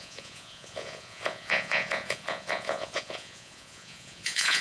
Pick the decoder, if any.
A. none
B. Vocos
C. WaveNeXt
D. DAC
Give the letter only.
B